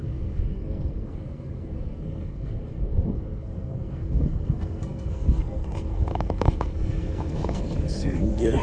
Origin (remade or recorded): remade